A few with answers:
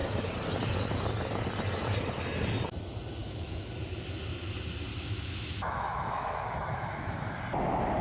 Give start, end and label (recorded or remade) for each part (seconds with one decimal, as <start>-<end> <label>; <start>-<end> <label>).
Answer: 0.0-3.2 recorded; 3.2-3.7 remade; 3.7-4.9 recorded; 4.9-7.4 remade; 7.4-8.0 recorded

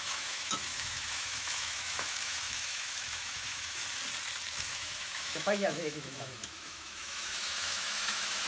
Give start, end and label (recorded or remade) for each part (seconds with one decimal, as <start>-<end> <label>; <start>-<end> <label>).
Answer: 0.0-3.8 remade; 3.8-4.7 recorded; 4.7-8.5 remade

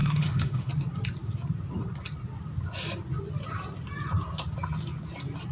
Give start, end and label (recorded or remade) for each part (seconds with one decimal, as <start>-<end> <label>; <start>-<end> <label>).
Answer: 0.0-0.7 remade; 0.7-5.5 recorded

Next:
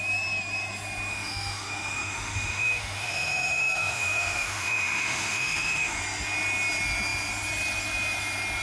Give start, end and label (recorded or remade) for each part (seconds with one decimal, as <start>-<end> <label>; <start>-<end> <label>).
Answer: 0.0-1.1 recorded; 1.1-6.0 remade; 6.0-8.6 recorded